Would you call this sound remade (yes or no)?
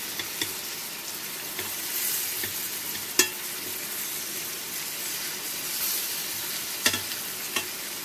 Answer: no